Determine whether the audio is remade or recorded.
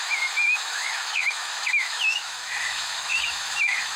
remade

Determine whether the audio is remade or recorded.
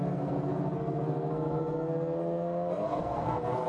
remade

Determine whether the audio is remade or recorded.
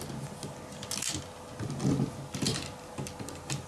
recorded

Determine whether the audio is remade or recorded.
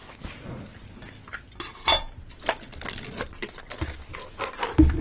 recorded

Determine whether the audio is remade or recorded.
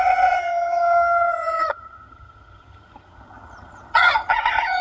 remade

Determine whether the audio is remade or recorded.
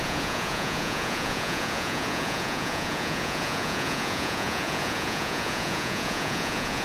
remade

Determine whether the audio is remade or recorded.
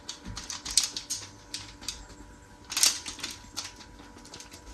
recorded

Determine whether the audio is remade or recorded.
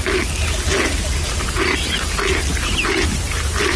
recorded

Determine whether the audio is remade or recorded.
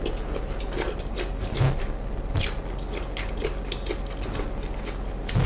recorded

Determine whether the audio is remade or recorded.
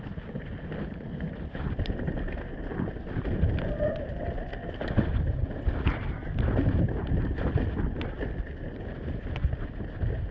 recorded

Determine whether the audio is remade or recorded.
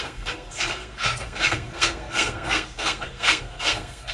remade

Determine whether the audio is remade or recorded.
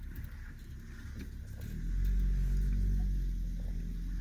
recorded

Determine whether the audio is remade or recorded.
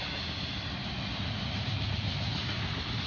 recorded